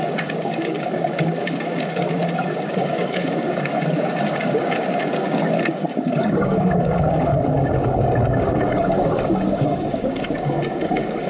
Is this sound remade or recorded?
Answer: remade